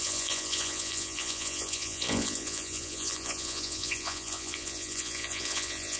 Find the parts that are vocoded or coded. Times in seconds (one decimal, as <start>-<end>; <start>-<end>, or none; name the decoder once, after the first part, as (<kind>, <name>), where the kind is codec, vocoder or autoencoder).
0.0-6.0 (vocoder, Vocos)